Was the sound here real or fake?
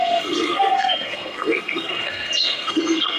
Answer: fake